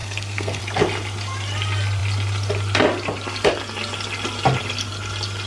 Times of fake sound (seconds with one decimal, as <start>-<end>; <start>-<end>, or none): 0.0-0.6